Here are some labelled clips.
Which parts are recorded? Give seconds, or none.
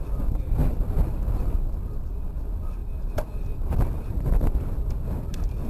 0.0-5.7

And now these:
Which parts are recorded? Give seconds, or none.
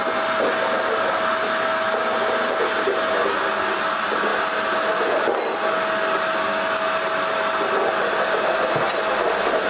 0.0-9.7